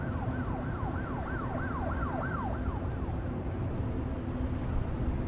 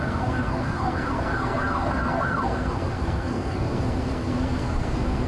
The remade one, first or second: second